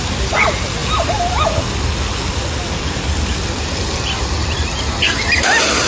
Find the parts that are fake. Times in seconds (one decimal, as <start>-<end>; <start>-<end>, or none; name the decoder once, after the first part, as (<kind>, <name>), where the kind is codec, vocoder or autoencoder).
none